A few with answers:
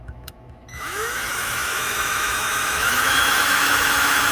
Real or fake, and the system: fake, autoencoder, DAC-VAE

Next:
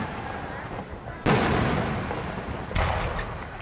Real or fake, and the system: real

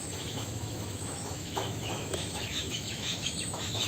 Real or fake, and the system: fake, autoencoder, DAC-VAE